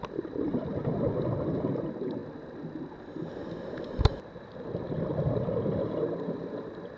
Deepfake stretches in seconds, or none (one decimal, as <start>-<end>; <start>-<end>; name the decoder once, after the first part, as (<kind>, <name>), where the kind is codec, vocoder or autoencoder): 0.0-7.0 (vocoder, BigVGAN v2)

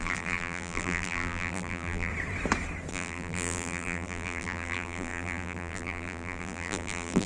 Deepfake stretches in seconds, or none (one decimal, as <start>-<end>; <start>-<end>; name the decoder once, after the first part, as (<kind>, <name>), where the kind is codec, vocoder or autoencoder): 0.0-2.1 (vocoder, BigVGAN v2); 2.9-7.3

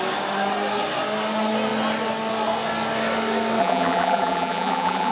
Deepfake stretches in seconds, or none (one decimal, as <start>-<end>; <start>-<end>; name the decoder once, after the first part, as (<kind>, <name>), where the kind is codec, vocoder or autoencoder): 3.6-5.1 (vocoder, BigVGAN v2)

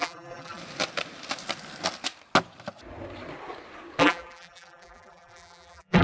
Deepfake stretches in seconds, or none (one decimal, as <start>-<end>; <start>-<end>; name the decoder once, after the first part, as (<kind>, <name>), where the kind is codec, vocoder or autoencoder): 0.0-0.6 (vocoder, BigVGAN v2); 4.0-6.0

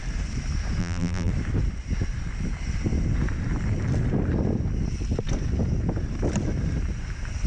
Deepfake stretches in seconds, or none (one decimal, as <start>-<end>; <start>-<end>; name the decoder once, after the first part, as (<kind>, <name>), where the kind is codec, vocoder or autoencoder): 0.8-1.3 (vocoder, BigVGAN v2)

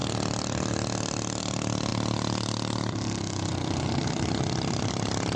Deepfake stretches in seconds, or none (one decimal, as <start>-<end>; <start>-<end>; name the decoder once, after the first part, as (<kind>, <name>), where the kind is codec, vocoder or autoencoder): none